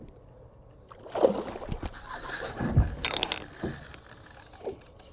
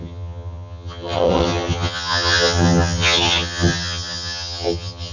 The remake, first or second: second